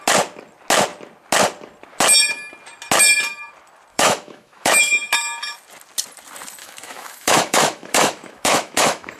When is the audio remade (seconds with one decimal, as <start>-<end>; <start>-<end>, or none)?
3.9-4.8; 6.6-9.2